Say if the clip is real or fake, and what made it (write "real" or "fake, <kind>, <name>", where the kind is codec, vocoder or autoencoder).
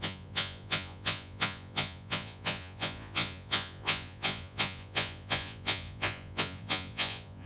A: fake, vocoder, Vocos